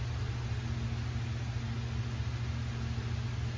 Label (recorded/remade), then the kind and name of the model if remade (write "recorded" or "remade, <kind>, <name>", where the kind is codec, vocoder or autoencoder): recorded